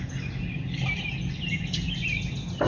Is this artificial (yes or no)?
no